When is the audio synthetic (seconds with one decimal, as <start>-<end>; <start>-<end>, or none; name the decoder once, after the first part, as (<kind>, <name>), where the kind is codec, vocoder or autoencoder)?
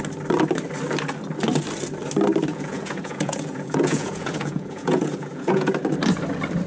2.5-5.7 (vocoder, Vocos)